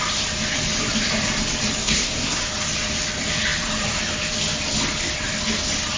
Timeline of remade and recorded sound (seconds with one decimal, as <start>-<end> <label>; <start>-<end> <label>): 0.0-1.8 recorded; 1.8-2.4 remade; 2.4-6.0 recorded